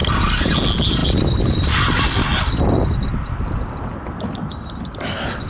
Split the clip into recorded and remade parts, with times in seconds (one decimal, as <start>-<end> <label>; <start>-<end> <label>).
0.0-5.5 recorded